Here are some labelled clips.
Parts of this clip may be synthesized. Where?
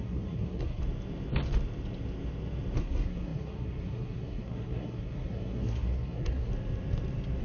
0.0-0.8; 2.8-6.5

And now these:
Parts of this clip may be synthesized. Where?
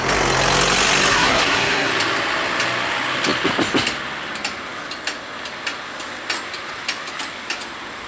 1.1-1.9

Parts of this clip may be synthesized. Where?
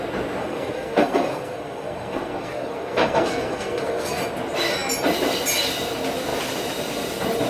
0.4-4.2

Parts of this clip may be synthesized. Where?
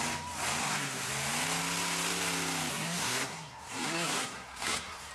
0.6-1.1; 2.7-5.1